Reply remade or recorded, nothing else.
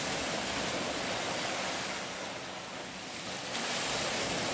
recorded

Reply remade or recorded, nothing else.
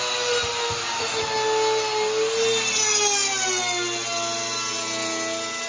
recorded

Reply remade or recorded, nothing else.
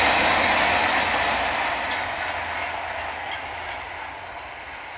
recorded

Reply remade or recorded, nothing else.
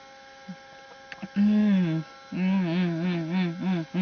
recorded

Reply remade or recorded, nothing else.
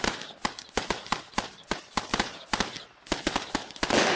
recorded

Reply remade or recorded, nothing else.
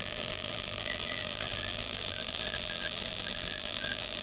remade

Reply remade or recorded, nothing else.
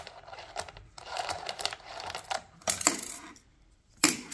remade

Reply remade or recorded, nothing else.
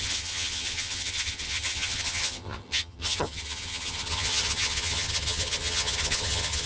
remade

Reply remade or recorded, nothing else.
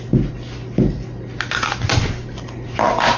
recorded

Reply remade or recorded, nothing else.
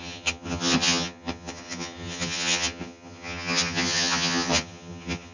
remade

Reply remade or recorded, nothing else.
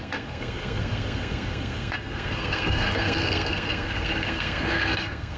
remade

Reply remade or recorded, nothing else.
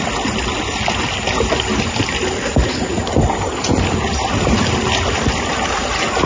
recorded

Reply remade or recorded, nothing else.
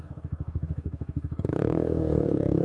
remade